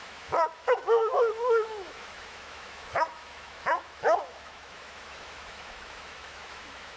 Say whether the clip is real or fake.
fake